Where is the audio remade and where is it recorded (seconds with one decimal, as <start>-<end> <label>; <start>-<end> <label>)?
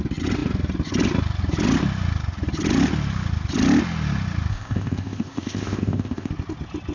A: 0.0-4.5 recorded; 4.5-6.3 remade; 6.3-6.9 recorded